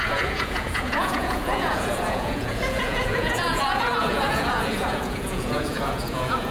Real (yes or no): no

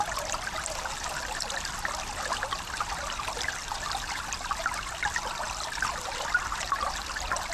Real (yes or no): yes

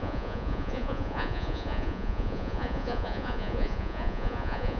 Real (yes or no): no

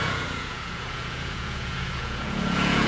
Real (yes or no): no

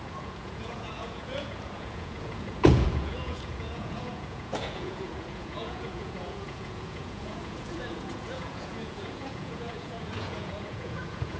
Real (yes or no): no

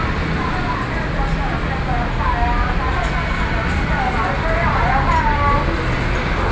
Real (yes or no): yes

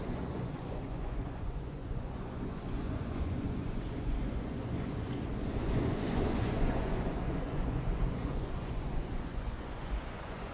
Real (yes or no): no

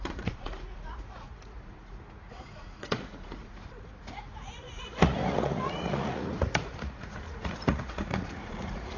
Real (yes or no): no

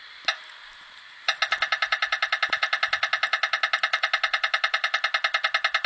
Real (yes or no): yes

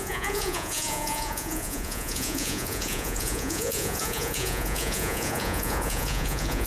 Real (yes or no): no